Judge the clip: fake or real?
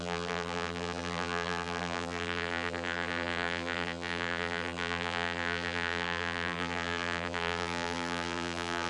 fake